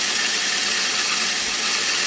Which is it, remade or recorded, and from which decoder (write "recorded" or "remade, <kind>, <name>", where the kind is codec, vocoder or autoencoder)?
recorded